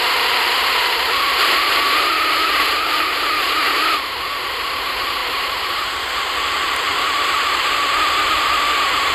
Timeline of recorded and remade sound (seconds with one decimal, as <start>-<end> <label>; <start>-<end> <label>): 0.0-5.2 recorded; 5.2-5.8 remade; 5.8-6.9 recorded; 6.9-7.8 remade; 7.8-9.1 recorded